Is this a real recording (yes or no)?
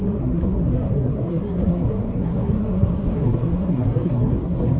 no